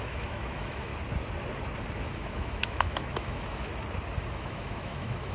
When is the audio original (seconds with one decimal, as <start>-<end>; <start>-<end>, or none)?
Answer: 0.9-2.0; 3.7-4.3